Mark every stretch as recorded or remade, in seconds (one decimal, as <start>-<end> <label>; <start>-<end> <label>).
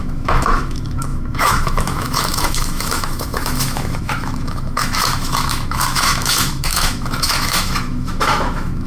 0.0-8.9 remade